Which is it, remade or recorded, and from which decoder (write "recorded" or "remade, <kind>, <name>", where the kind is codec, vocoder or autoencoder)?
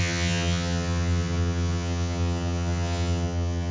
remade, vocoder, HiFi-GAN